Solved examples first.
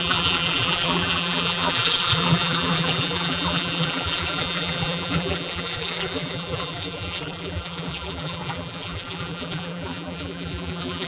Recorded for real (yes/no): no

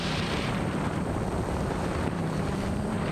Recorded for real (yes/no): no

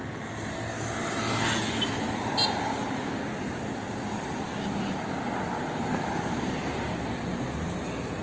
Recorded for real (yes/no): yes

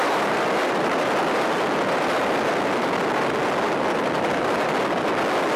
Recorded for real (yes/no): yes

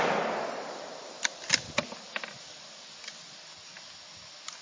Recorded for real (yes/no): yes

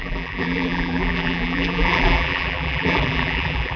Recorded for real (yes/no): no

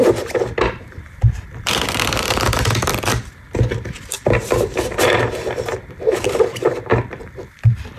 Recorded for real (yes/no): no